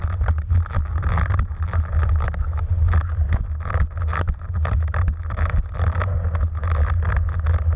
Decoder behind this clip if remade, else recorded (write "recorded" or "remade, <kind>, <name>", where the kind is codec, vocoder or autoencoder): recorded